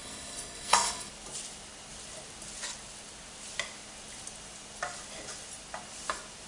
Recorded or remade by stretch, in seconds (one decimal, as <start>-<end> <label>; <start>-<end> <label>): 0.0-1.1 remade; 1.1-6.5 recorded